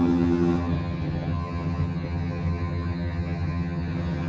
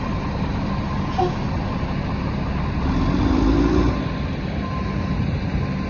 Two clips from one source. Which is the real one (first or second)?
second